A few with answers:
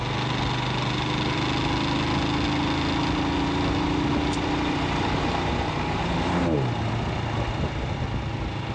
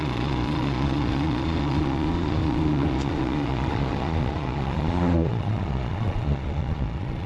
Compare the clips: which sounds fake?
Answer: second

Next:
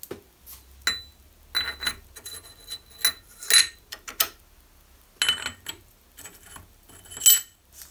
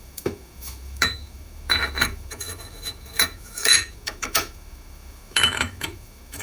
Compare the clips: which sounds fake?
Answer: second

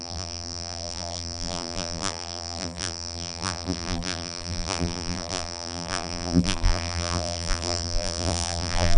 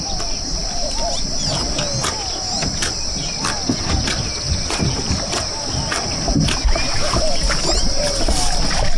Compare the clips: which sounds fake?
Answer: first